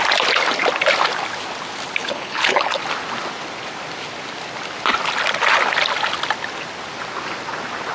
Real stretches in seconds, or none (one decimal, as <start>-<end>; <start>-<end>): 0.0-2.0; 2.8-7.9